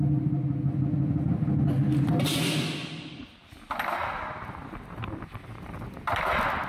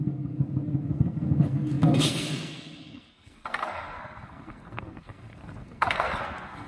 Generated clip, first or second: second